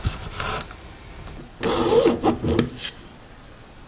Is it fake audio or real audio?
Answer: real